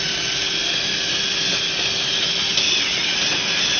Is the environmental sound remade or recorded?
recorded